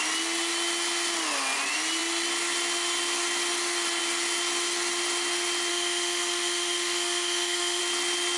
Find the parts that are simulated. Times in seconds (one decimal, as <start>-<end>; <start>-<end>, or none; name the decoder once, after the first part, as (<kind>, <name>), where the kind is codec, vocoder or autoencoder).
5.7-7.8 (autoencoder, DAC-VAE)